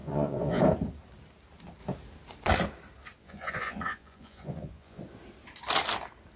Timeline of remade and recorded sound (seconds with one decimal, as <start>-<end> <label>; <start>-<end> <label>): 0.0-0.6 remade; 0.6-3.2 recorded; 3.2-5.0 remade; 5.0-6.4 recorded